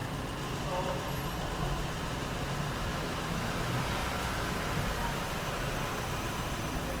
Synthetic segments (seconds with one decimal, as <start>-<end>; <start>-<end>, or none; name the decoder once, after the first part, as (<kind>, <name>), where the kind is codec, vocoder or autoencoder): 2.9-3.5 (autoencoder, DAC-VAE)